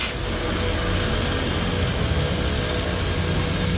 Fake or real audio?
real